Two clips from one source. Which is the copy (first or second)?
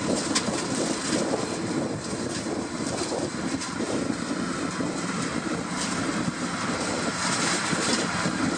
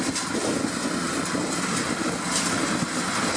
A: first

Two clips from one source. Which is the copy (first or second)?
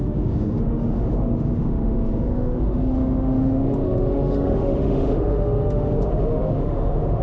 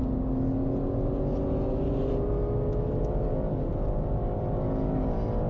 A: first